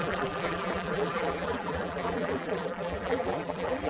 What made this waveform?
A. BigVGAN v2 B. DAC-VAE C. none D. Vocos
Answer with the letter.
A